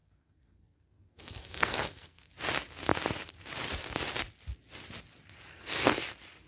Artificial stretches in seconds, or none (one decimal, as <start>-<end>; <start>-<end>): 0.0-2.3; 5.5-6.0